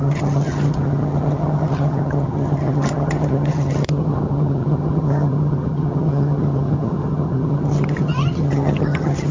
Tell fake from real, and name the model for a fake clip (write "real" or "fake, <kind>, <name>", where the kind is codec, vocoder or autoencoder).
fake, vocoder, HiFi-GAN